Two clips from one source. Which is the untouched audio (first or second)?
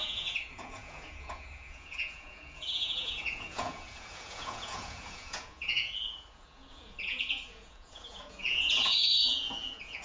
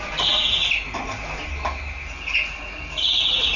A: second